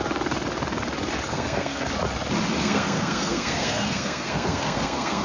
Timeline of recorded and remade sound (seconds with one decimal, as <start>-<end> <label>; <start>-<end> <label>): 0.0-1.3 recorded; 1.3-1.9 remade; 1.9-2.6 recorded; 2.6-5.2 remade